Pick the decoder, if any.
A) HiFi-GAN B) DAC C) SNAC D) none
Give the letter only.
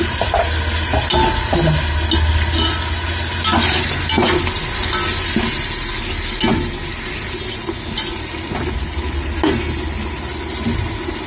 D